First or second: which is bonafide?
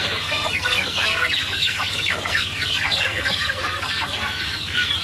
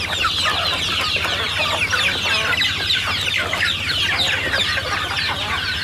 second